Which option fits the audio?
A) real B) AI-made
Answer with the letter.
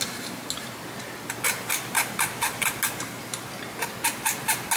A